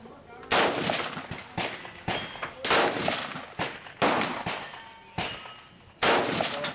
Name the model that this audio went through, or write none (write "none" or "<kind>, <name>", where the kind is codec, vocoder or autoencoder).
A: none